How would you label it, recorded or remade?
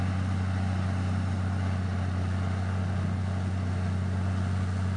recorded